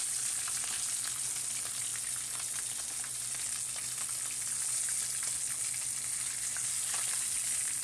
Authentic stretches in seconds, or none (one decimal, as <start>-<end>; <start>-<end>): 0.0-7.8